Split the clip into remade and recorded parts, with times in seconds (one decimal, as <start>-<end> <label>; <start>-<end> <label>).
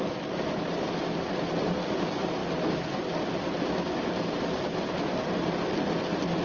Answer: 0.0-6.4 recorded